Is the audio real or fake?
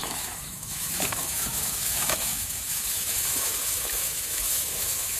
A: fake